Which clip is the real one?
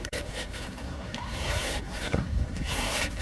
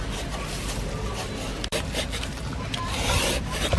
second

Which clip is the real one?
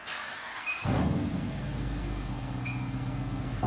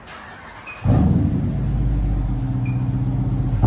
second